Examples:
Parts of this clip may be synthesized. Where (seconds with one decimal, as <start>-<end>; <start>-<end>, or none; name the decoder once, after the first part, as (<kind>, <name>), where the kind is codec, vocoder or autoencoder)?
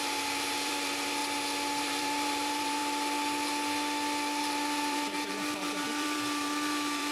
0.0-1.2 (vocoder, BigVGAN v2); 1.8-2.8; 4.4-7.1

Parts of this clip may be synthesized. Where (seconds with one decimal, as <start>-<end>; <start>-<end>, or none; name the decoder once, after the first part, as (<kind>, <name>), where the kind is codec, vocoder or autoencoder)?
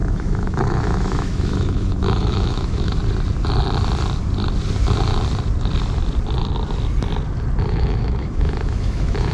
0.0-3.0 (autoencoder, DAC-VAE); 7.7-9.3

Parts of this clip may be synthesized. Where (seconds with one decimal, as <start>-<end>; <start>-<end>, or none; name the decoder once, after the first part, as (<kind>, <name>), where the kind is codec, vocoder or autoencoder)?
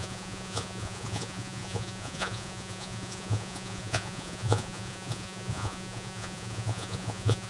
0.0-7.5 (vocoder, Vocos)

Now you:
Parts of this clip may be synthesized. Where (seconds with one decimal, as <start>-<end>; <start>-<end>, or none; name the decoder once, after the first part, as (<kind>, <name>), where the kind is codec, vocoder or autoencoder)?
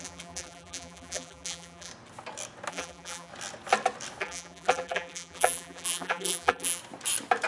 0.0-1.9 (vocoder, BigVGAN v2); 2.7-3.3; 4.2-6.8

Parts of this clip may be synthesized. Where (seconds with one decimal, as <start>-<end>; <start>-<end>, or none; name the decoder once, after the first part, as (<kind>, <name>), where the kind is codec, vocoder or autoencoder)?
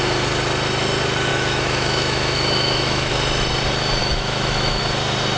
1.3-3.1 (autoencoder, DAC-VAE); 4.0-4.8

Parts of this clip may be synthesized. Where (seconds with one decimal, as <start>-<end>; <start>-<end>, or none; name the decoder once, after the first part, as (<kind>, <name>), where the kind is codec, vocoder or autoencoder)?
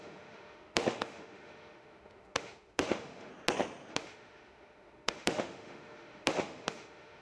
0.0-3.3 (autoencoder, DAC-VAE); 3.9-7.2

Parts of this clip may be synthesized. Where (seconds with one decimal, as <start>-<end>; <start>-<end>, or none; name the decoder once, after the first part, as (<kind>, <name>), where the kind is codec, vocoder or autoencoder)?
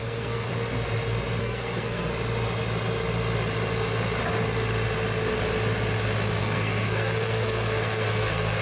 0.0-0.5 (codec, SNAC); 1.4-2.1; 6.4-8.6